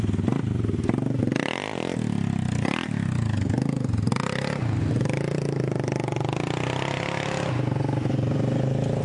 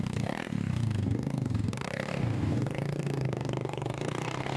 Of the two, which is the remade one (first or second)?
second